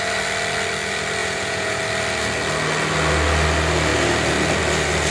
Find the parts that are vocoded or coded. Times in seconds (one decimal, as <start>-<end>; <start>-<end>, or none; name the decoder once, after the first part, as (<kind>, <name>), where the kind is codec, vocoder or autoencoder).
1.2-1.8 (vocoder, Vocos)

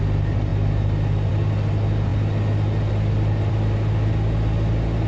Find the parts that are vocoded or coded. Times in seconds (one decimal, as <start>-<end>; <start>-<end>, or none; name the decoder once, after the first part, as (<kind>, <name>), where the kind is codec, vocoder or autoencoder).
none

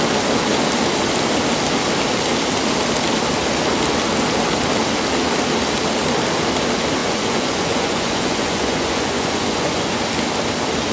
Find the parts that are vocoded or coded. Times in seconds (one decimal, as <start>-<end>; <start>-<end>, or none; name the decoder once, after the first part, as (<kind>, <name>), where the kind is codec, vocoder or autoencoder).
7.0-10.0 (vocoder, Vocos)

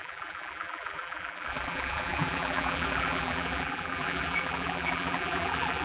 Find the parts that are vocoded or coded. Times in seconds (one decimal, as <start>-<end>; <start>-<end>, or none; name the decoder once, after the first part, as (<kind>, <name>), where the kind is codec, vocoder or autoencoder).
0.0-5.8 (vocoder, BigVGAN v2)

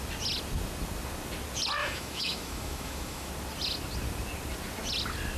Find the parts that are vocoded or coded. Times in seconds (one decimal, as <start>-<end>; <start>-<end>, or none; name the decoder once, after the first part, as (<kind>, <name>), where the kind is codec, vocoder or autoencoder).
1.8-3.3 (autoencoder, DAC-VAE)

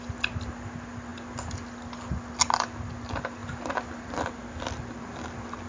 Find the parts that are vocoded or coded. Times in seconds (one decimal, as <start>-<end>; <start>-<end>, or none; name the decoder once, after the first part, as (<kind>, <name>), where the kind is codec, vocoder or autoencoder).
none